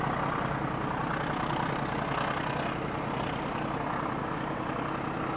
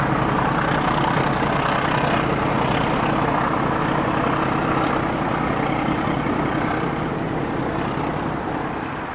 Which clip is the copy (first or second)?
second